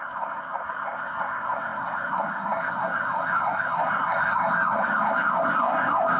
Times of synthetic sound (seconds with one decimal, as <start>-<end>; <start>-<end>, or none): 0.0-6.2